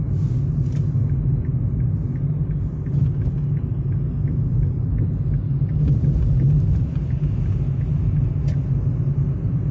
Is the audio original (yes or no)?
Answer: yes